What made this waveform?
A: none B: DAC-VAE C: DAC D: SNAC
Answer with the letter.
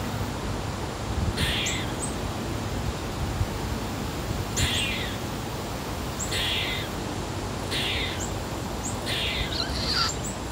A